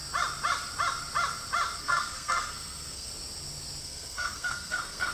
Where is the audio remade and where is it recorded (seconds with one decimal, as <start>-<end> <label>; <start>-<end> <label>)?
0.0-1.8 recorded; 1.8-3.1 remade; 3.1-3.8 recorded; 3.8-5.1 remade